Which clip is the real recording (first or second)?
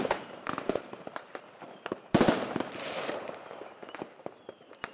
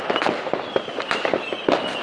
second